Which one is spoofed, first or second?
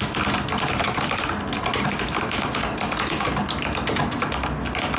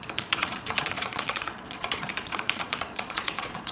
second